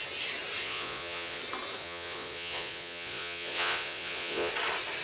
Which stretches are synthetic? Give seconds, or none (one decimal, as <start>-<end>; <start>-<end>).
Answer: 0.6-1.4; 1.8-4.5